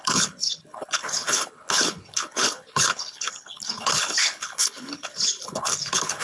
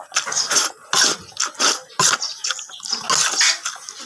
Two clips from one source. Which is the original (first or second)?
second